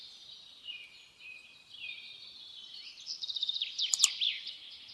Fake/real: real